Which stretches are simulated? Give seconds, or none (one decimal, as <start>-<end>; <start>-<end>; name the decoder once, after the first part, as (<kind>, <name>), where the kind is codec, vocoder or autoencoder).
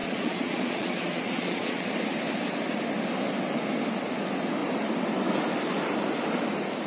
0.0-1.9 (vocoder, Vocos)